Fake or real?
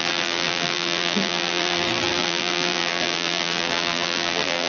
fake